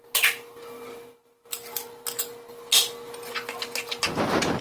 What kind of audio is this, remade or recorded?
recorded